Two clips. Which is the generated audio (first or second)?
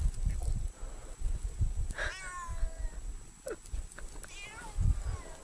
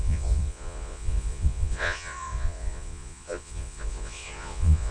second